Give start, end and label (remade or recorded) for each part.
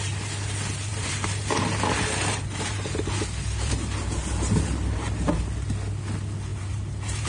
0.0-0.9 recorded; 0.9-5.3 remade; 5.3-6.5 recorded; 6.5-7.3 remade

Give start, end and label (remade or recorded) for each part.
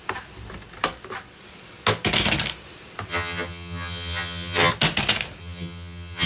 0.0-3.1 recorded; 3.1-4.7 remade; 4.7-5.4 recorded; 5.4-6.3 remade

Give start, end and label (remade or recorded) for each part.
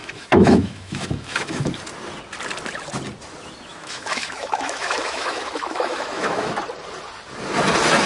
0.0-1.7 remade; 1.7-3.7 recorded; 3.7-6.5 remade; 6.5-8.1 recorded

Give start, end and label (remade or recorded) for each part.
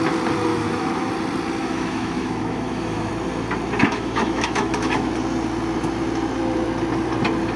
0.0-0.5 recorded; 0.5-1.1 remade; 1.1-1.6 recorded; 1.6-3.1 remade; 3.1-3.8 recorded; 3.8-5.1 remade; 5.1-7.6 recorded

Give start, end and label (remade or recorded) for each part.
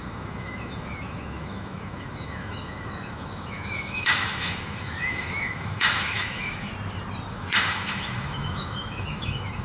0.0-6.7 remade; 6.7-7.3 recorded; 7.3-9.6 remade